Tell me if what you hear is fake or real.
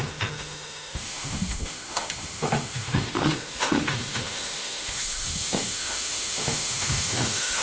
fake